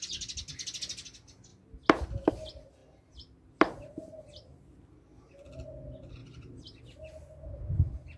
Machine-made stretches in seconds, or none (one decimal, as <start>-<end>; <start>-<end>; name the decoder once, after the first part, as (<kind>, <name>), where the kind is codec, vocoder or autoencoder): 6.2-6.8 (vocoder, BigVGAN v2)